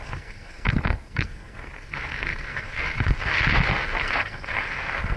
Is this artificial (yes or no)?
yes